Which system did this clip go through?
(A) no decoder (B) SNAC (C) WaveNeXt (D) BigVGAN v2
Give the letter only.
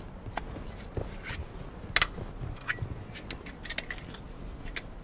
A